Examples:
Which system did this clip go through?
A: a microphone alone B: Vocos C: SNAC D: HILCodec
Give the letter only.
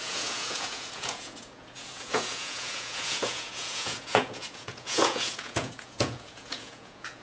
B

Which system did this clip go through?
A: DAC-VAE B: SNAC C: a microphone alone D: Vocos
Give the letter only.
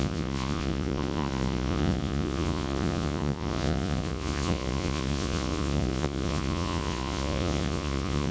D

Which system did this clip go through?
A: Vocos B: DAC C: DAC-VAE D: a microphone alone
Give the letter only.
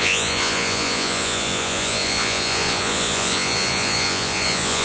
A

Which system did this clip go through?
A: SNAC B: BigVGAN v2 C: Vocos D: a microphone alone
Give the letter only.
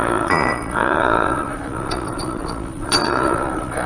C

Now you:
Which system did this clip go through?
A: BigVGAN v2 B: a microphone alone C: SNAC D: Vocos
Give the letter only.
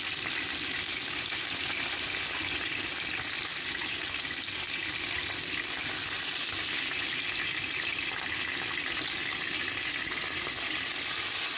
B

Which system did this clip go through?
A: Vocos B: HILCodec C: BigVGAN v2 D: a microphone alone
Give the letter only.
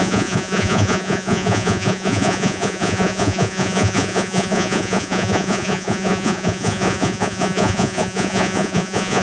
A